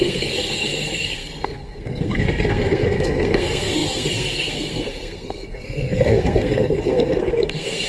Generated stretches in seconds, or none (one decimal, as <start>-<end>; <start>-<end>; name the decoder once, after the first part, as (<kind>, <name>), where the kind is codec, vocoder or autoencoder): 0.0-7.9 (codec, SNAC)